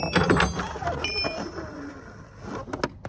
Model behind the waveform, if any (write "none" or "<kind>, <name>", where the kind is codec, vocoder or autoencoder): none